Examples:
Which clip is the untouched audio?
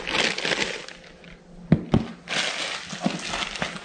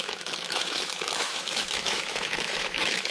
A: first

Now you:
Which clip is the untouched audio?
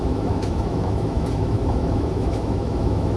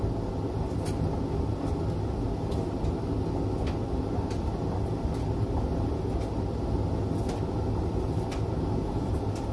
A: second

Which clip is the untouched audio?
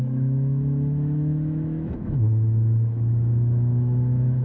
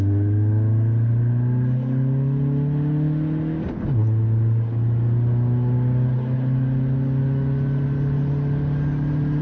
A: second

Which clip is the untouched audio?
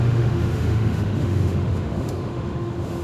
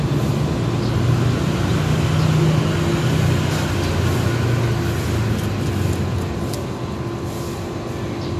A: second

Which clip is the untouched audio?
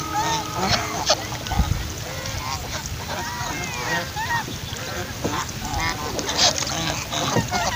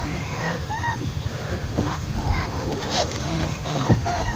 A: first